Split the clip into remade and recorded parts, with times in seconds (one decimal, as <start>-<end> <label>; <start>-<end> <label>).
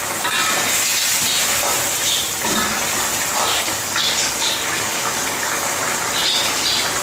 0.0-3.5 recorded; 3.5-5.8 remade; 5.8-7.0 recorded